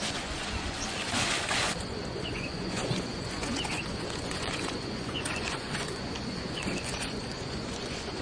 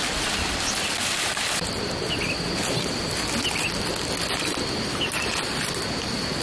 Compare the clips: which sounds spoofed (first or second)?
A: first